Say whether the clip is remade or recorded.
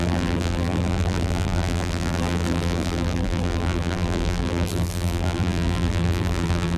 remade